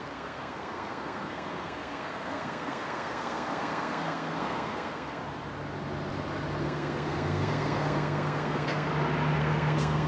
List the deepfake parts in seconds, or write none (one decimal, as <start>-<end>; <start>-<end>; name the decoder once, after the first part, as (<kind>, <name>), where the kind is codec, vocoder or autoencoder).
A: 0.0-5.2 (codec, SNAC); 6.6-8.9; 9.4-10.1